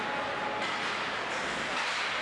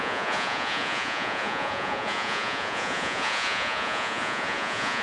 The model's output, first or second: second